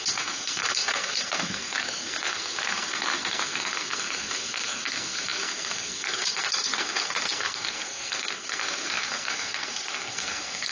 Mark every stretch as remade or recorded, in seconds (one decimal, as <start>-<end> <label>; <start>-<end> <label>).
0.0-10.7 remade